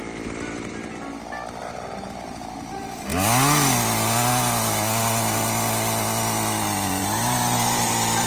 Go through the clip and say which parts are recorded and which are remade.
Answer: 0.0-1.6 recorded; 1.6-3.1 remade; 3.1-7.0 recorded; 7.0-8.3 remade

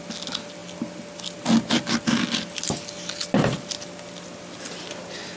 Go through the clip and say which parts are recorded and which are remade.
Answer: 0.0-5.4 recorded

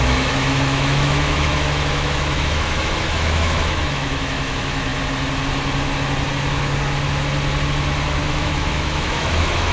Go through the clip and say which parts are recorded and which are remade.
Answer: 0.0-4.9 remade; 4.9-8.2 recorded; 8.2-9.7 remade

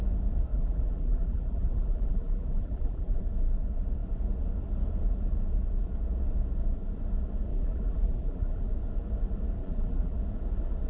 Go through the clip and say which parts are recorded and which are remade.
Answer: 0.0-0.5 recorded; 0.5-3.2 remade; 3.2-7.5 recorded; 7.5-8.7 remade; 8.7-9.6 recorded; 9.6-10.2 remade; 10.2-10.9 recorded

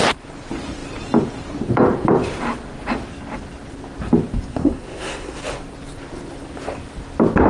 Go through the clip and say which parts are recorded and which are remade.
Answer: 0.0-4.5 recorded; 4.5-5.4 remade; 5.4-7.5 recorded

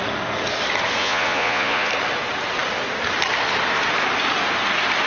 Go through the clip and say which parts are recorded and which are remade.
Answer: 0.0-1.0 recorded; 1.0-1.9 remade; 1.9-5.1 recorded